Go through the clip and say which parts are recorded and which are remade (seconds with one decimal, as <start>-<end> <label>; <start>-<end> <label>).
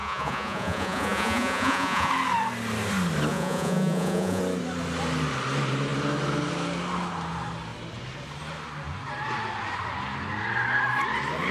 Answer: 0.0-2.1 remade; 2.1-3.3 recorded; 3.3-4.4 remade; 4.4-11.5 recorded